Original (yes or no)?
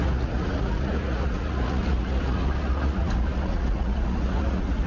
no